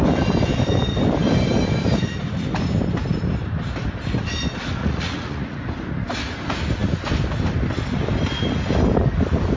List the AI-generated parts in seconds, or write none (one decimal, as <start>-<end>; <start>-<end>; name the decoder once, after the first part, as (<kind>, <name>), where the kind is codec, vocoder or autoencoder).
4.8-5.6 (vocoder, Vocos)